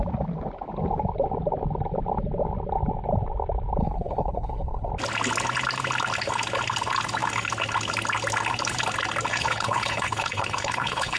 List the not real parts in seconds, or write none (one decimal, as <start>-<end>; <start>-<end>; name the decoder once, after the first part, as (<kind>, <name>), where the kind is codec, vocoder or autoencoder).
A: 3.8-4.9 (codec, HILCodec); 9.3-11.2